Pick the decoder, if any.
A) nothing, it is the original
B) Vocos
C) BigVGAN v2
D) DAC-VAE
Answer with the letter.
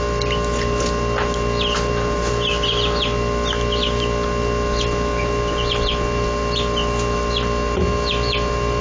A